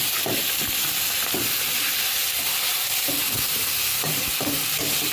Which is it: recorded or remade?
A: recorded